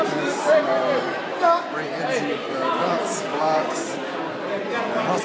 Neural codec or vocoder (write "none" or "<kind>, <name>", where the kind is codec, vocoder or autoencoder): none